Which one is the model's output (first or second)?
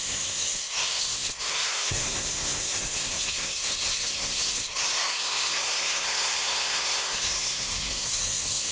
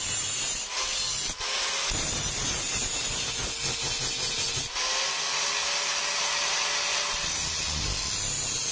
first